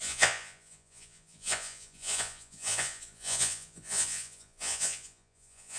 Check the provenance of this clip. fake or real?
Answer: fake